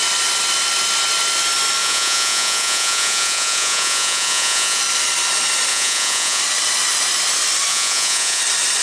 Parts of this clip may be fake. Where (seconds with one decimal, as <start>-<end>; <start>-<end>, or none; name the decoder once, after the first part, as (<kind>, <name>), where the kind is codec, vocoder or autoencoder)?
1.8-4.8 (vocoder, Vocos); 5.7-6.4; 7.7-8.4